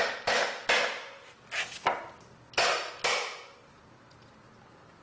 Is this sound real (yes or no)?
yes